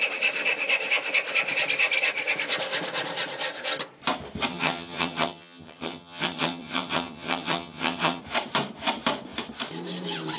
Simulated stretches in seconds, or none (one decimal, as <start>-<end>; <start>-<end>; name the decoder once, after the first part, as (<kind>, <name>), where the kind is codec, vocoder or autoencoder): 4.5-8.2 (vocoder, HiFi-GAN)